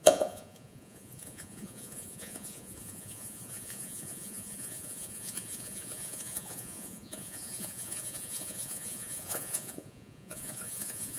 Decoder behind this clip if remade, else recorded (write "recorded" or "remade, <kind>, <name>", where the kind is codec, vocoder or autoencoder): remade, vocoder, Vocos